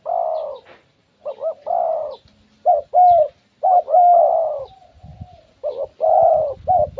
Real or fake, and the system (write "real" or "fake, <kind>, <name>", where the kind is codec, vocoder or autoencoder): real